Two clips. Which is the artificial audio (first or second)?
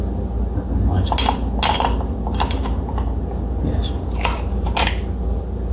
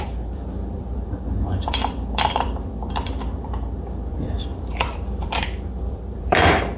second